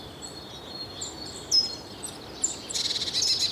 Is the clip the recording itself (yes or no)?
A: yes